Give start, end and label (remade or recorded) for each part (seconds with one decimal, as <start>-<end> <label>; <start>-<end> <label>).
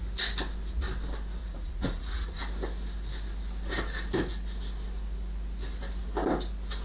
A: 0.0-1.4 recorded; 1.4-2.4 remade; 2.4-6.8 recorded